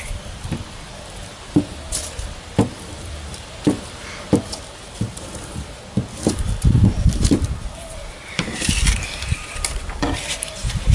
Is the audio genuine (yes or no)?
no